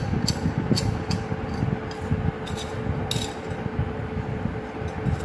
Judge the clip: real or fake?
real